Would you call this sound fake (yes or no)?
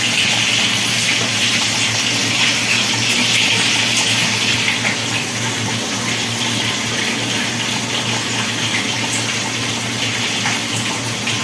no